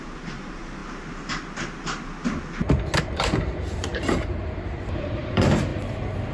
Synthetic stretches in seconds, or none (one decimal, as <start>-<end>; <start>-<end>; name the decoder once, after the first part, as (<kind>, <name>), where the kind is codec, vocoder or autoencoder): 0.0-0.8 (vocoder, BigVGAN v2); 3.0-5.7